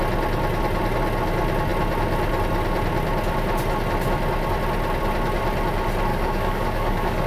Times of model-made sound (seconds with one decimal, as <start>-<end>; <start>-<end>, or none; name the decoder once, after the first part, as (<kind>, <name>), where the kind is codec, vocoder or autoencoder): 6.1-7.3 (codec, DAC)